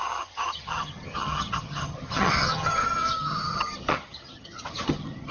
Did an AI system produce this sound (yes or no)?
yes